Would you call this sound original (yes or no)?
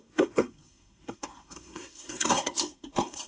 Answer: no